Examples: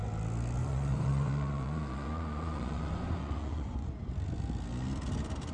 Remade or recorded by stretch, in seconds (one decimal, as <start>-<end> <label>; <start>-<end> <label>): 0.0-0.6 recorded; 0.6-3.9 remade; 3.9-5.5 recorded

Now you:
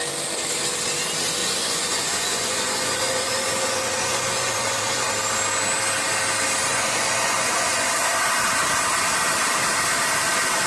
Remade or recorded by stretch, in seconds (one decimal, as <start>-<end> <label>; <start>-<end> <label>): 0.0-1.4 recorded; 1.4-5.1 remade; 5.1-6.7 recorded; 6.7-8.1 remade; 8.1-10.7 recorded

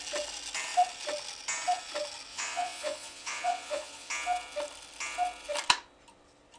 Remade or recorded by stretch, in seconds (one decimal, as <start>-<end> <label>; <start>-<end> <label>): 0.0-2.3 recorded; 2.3-4.1 remade; 4.1-6.6 recorded